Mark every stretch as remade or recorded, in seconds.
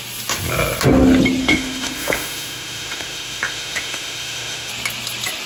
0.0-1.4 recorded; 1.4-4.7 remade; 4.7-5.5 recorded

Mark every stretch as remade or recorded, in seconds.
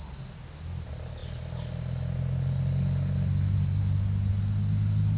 0.0-5.2 recorded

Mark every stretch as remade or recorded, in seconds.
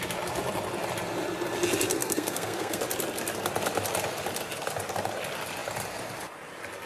0.0-2.0 recorded; 2.0-2.8 remade; 2.8-6.9 recorded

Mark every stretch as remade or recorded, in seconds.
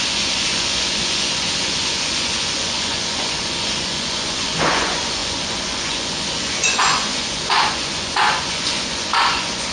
0.0-9.7 remade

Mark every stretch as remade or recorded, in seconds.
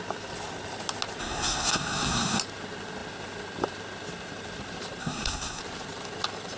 0.0-1.2 recorded; 1.2-2.4 remade; 2.4-5.0 recorded; 5.0-5.6 remade; 5.6-6.6 recorded